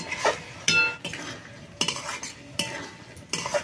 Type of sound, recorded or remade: recorded